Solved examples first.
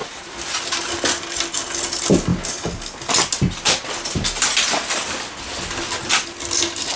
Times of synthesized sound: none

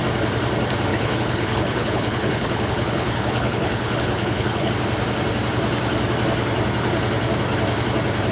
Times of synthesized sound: 0.9-4.7 (codec, HILCodec)

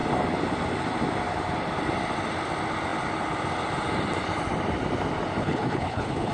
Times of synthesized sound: 5.4-6.3 (codec, HILCodec)

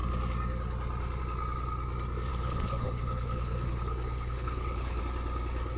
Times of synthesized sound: 2.3-5.0 (codec, HILCodec)

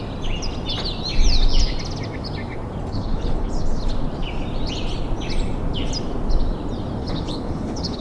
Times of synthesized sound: 2.9-3.5 (codec, HILCodec); 7.0-8.0